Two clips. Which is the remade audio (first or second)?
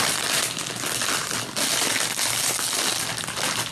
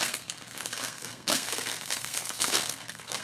second